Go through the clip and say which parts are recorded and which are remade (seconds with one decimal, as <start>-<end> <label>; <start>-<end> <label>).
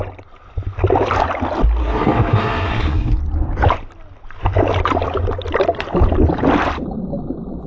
0.0-1.8 recorded; 1.8-3.2 remade; 3.2-7.7 recorded